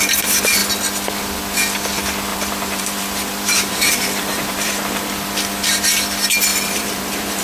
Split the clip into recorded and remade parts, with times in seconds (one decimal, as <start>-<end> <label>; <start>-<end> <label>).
0.0-2.3 recorded; 2.3-4.8 remade; 4.8-6.5 recorded; 6.5-7.4 remade